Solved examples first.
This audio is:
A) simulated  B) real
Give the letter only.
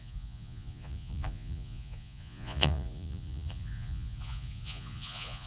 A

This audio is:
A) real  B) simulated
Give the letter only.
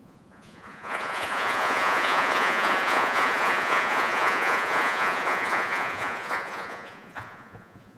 B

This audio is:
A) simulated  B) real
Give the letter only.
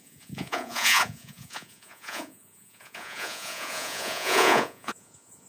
A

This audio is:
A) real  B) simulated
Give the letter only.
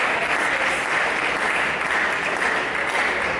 A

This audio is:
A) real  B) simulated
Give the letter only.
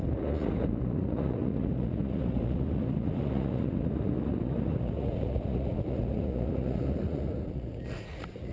B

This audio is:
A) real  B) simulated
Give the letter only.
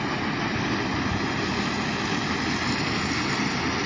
A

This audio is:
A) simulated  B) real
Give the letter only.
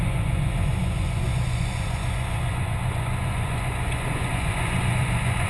A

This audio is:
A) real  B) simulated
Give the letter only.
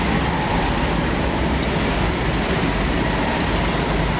A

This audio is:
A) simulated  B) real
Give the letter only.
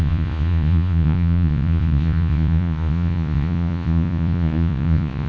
A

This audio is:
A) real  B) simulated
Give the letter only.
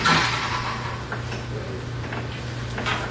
A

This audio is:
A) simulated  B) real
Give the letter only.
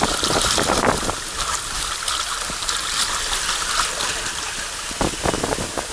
B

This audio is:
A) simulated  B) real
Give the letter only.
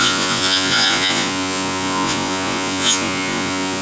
A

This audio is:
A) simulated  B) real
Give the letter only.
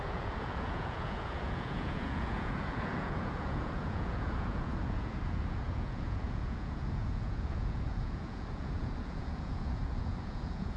A